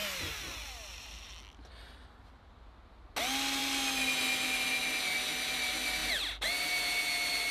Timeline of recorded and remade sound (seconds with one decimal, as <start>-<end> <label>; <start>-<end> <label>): 0.0-7.5 recorded